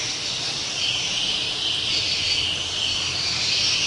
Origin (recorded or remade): recorded